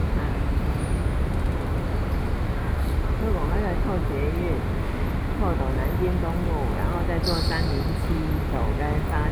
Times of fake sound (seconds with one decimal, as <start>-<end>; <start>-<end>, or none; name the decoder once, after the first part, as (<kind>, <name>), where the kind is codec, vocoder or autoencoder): 0.0-1.0 (vocoder, BigVGAN v2)